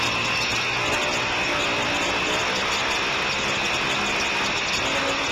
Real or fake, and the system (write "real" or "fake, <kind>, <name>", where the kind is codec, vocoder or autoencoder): real